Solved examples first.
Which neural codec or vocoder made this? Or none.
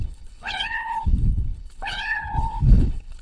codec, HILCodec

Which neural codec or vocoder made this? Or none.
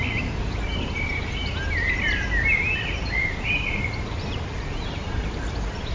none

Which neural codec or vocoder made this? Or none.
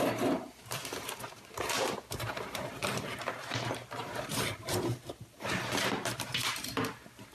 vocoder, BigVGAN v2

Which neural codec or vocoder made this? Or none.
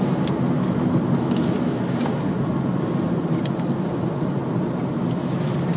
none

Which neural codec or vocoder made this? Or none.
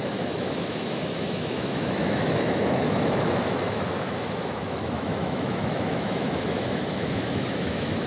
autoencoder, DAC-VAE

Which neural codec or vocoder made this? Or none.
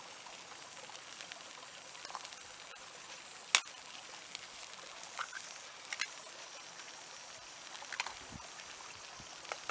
none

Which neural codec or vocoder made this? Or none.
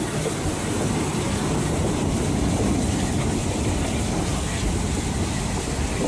none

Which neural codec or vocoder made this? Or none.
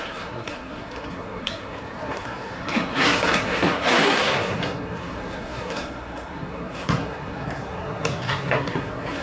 codec, SNAC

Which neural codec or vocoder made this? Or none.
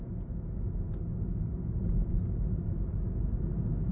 none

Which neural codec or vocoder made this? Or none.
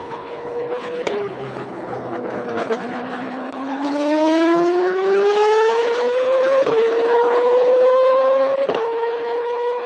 codec, HILCodec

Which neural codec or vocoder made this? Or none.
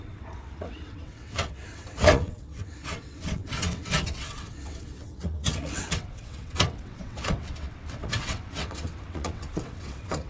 vocoder, WaveNeXt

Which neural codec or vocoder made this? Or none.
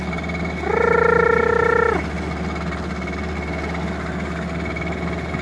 none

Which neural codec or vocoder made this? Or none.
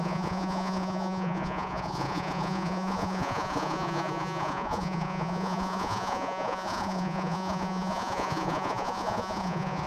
vocoder, Vocos